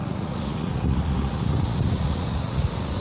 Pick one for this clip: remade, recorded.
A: remade